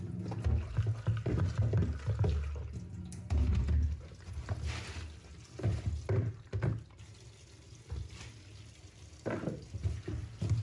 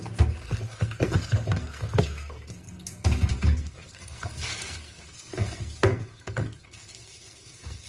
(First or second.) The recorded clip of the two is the first